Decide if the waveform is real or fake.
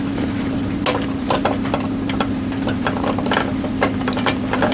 real